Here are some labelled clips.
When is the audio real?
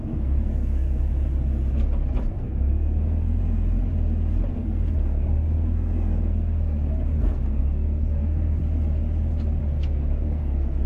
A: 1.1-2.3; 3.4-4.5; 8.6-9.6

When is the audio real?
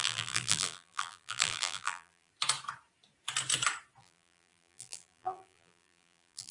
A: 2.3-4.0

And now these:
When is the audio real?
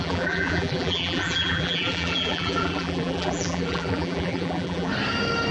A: 4.9-5.5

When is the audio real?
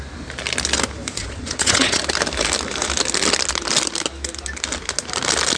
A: 0.0-1.2; 2.0-5.6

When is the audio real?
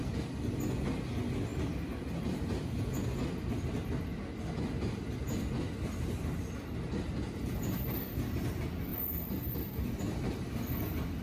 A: 0.0-1.5; 2.8-11.2